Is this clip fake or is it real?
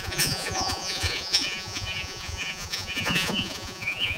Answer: fake